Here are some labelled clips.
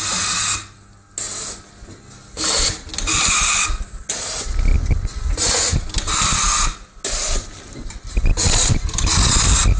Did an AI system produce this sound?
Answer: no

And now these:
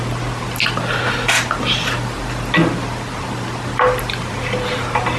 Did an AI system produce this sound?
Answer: no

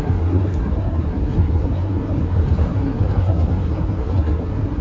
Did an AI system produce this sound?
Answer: yes